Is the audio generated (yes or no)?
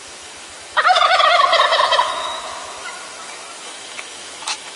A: yes